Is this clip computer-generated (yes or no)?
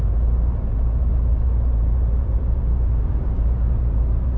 yes